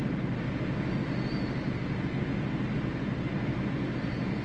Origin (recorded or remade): recorded